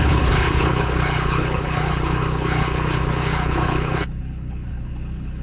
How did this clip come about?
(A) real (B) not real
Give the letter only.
B